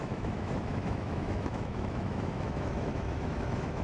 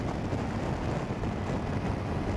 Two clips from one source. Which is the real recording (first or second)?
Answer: second